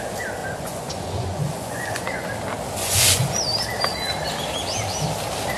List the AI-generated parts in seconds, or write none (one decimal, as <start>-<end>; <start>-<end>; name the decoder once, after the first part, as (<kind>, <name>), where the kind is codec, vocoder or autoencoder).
0.4-2.3 (vocoder, Vocos); 2.8-3.4